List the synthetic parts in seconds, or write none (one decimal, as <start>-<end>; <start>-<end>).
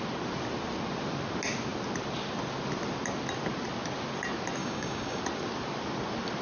4.6-5.2